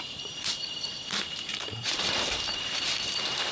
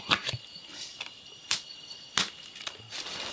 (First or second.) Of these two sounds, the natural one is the second